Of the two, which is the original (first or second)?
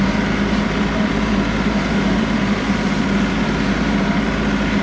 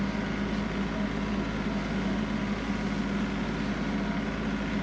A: second